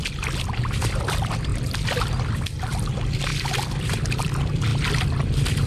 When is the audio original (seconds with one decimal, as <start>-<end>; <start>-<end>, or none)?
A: 1.5-2.0; 3.3-3.8; 4.7-5.7